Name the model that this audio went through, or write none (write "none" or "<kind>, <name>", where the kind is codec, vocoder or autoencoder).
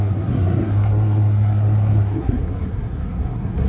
codec, SNAC